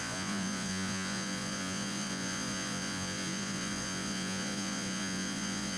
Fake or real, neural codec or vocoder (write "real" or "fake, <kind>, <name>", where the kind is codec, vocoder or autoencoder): fake, vocoder, Vocos